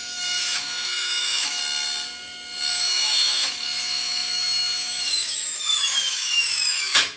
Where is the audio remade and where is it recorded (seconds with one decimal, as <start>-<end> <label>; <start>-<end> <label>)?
0.0-1.6 remade; 1.6-2.7 recorded; 2.7-7.2 remade